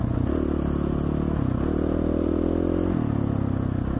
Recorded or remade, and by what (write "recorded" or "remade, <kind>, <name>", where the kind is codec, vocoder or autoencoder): recorded